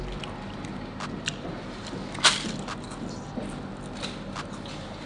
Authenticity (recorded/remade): recorded